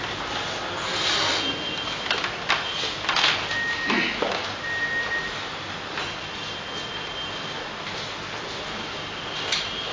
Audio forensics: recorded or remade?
recorded